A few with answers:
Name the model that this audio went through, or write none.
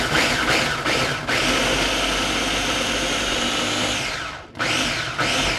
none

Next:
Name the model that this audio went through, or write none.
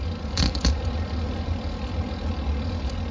none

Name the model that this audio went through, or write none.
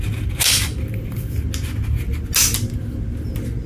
none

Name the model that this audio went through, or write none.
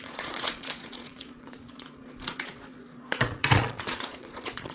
vocoder, Vocos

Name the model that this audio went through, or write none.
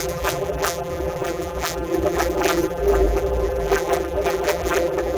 vocoder, BigVGAN v2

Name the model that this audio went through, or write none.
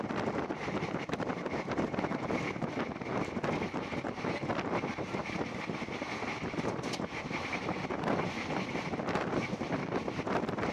none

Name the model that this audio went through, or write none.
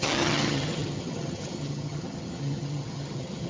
vocoder, HiFi-GAN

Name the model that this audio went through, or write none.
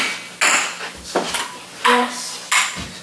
none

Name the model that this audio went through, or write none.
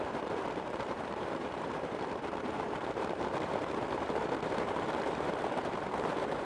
vocoder, BigVGAN v2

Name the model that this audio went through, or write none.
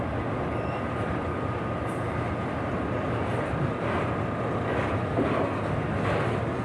none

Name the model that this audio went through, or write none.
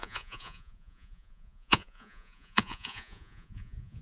vocoder, Vocos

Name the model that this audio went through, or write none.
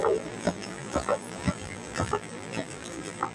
vocoder, BigVGAN v2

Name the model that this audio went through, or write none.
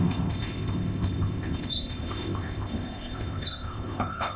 codec, ZipCodec